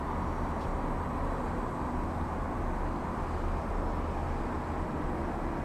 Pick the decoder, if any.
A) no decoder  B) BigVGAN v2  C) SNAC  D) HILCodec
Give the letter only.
A